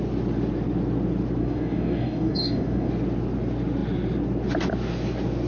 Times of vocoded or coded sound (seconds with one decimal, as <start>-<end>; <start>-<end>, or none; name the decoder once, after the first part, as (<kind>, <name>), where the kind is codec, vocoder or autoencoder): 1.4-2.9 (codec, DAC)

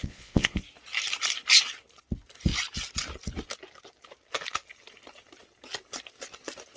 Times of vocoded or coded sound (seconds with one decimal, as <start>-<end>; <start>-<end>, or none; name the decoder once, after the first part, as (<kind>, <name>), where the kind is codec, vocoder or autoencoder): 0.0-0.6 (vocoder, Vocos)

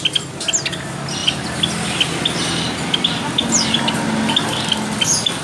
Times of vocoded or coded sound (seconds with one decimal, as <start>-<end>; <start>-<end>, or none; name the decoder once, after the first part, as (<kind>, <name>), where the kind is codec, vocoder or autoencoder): none

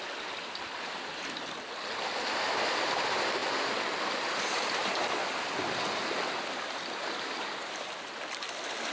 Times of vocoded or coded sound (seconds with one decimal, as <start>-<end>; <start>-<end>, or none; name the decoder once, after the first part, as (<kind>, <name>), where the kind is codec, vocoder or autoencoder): none